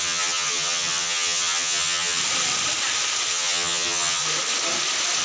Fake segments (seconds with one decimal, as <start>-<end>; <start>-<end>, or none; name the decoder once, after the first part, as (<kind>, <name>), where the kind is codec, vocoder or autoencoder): 0.0-2.2 (vocoder, HiFi-GAN); 3.3-4.2